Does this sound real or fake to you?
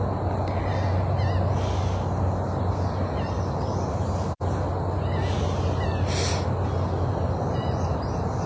real